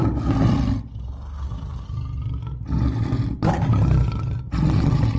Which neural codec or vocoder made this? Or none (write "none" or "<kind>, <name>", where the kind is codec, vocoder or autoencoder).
none